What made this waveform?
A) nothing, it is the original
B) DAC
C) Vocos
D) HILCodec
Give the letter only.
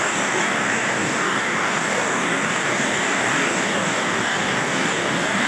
B